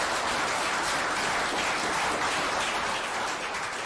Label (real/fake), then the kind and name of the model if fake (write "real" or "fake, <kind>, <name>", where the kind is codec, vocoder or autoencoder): real